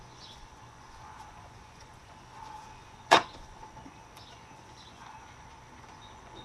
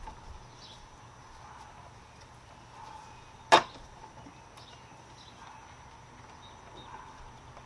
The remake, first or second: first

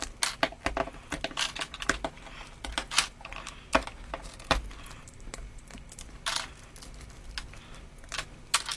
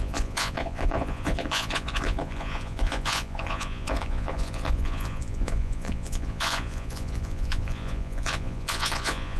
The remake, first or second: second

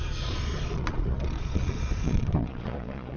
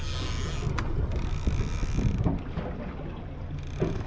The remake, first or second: first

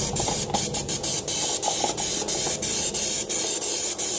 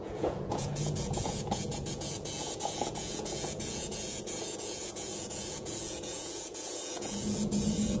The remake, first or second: second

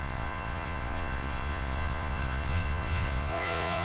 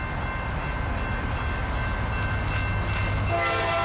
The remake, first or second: first